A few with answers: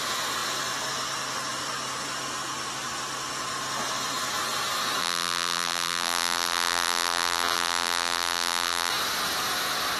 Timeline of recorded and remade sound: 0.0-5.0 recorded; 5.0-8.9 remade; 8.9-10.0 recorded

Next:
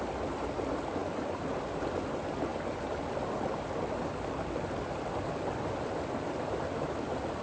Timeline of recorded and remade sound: 0.0-7.4 recorded

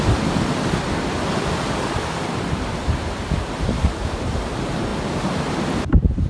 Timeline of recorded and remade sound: 0.0-6.3 recorded

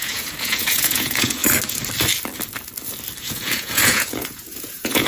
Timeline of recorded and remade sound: 0.0-1.4 remade; 1.4-3.2 recorded; 3.2-5.1 remade

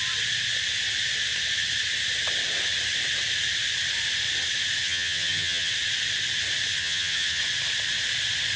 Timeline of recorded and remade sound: 0.0-4.8 recorded; 4.8-5.7 remade; 5.7-6.8 recorded; 6.8-7.4 remade; 7.4-8.6 recorded

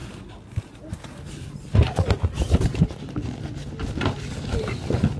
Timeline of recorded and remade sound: 0.0-5.2 recorded

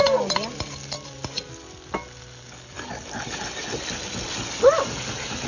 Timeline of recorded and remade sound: 0.0-5.5 recorded

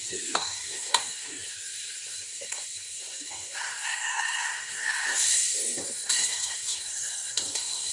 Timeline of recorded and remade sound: 0.0-7.9 remade